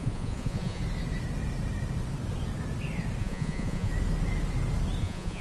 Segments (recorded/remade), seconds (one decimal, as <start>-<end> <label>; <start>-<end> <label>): 0.0-0.8 remade; 0.8-3.2 recorded; 3.2-3.9 remade; 3.9-5.0 recorded; 5.0-5.4 remade